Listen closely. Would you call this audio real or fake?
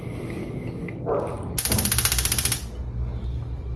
real